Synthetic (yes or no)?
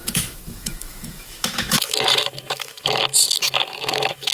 yes